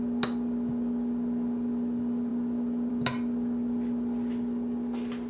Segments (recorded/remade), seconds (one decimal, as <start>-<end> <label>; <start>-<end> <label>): 0.0-5.3 recorded